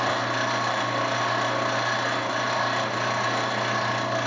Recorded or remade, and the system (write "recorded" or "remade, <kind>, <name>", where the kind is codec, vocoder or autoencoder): recorded